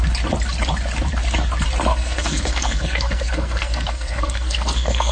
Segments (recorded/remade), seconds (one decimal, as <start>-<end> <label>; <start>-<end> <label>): 0.0-1.9 recorded; 1.9-5.1 remade